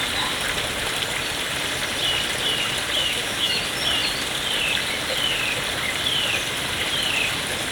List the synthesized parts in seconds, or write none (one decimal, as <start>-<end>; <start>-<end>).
3.0-3.6